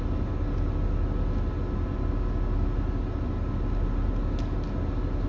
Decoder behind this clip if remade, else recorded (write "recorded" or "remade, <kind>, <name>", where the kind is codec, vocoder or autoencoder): recorded